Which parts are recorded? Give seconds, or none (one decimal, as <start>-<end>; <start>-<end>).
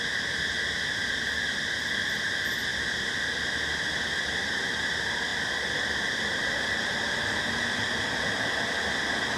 0.0-1.0; 2.0-5.3; 7.6-9.4